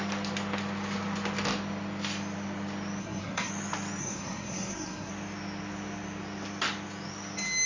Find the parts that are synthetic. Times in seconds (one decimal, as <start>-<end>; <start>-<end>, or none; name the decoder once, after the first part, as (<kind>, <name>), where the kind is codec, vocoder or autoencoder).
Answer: 3.0-3.5 (codec, SNAC); 4.0-5.1